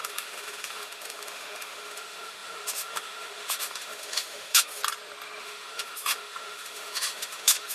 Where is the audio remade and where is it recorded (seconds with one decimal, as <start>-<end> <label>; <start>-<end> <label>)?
0.0-4.8 remade; 4.8-5.4 recorded; 5.4-7.7 remade